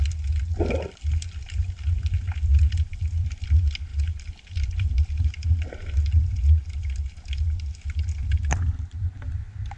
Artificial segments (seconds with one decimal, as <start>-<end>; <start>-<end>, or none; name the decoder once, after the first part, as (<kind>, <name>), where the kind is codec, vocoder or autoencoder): 3.9-5.3 (vocoder, BigVGAN v2)